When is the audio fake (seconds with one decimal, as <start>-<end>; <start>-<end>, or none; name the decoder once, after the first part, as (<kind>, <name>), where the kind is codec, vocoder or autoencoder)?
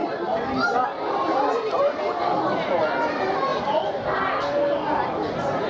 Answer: none